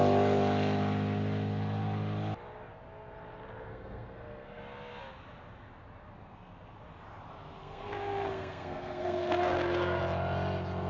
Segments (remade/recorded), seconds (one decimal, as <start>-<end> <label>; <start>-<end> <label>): 0.0-3.7 recorded; 3.7-4.6 remade; 4.6-7.6 recorded; 7.6-10.0 remade; 10.0-10.9 recorded